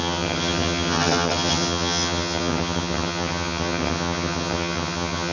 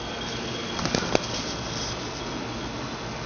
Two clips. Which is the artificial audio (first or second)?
first